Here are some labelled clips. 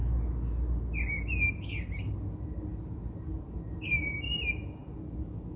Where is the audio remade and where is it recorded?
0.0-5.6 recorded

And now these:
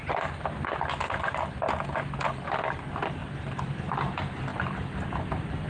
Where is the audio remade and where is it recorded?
0.0-5.7 recorded

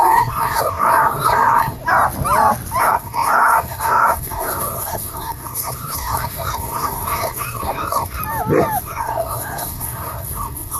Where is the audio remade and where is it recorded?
0.0-1.8 remade; 1.8-2.8 recorded; 2.8-8.2 remade; 8.2-8.8 recorded; 8.8-10.8 remade

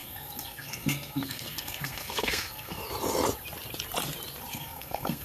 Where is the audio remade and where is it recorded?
0.0-2.8 remade; 2.8-4.5 recorded; 4.5-5.2 remade

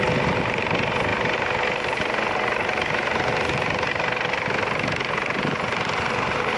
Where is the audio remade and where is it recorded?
0.0-6.6 recorded

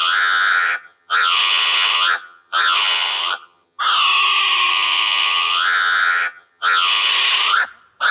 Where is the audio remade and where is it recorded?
0.0-3.8 remade; 3.8-4.7 recorded; 4.7-7.1 remade; 7.1-8.1 recorded